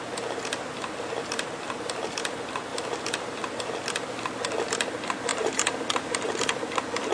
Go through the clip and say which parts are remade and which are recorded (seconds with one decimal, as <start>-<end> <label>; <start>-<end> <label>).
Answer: 0.0-5.3 recorded; 5.3-6.3 remade; 6.3-7.1 recorded